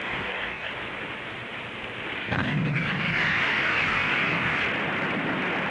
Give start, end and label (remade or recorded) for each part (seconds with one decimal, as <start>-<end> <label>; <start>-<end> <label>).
0.0-0.7 remade; 0.7-2.2 recorded; 2.2-4.6 remade; 4.6-5.7 recorded